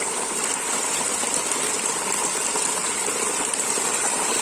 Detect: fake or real fake